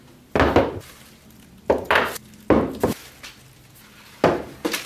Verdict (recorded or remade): recorded